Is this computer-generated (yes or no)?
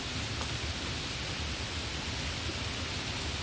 no